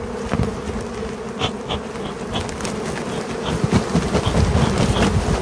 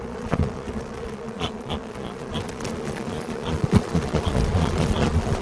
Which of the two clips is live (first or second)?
first